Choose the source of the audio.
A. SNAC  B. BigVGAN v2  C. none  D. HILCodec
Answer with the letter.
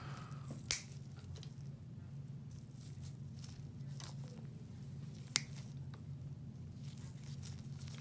C